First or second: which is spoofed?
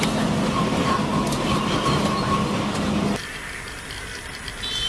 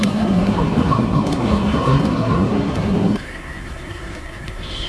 second